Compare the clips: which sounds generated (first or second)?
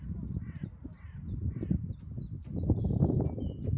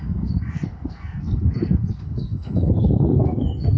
second